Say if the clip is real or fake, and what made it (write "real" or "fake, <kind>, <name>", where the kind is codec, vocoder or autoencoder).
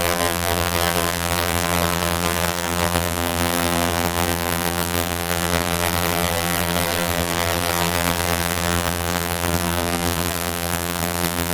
fake, vocoder, BigVGAN v2